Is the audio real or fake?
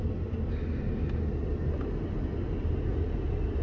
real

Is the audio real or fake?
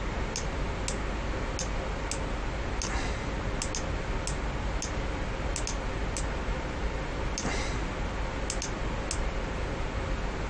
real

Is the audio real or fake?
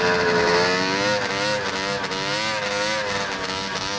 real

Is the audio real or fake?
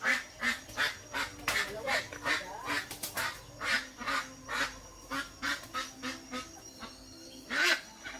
real